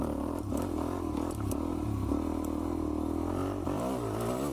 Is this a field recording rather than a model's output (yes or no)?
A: yes